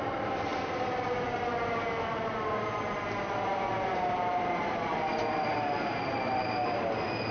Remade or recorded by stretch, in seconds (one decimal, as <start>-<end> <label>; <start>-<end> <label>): 0.0-7.3 recorded